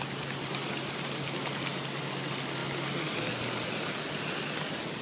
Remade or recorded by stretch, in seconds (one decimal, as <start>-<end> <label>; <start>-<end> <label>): 0.0-5.0 recorded